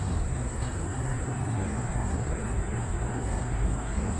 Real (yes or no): no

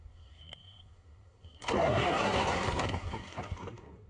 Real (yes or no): no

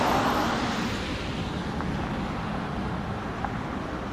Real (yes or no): yes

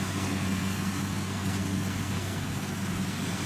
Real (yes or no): no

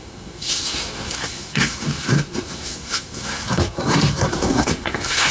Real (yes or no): no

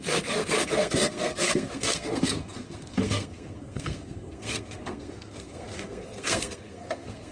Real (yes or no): no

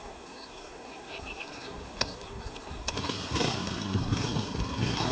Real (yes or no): no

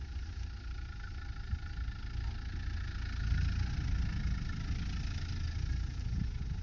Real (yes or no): yes